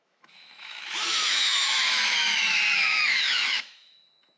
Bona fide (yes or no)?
no